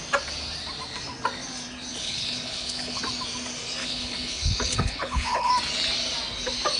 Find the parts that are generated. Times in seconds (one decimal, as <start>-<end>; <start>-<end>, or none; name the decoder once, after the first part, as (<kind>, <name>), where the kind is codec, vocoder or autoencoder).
1.9-3.0 (codec, HILCodec); 3.8-5.5